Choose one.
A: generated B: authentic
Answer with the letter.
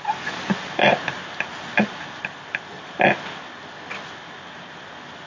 B